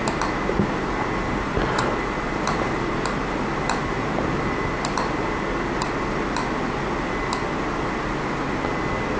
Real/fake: real